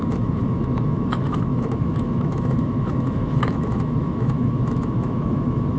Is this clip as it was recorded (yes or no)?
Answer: no